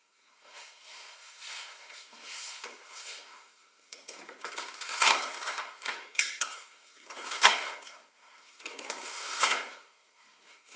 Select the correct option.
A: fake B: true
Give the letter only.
A